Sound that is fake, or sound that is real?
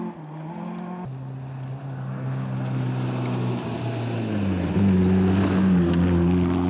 real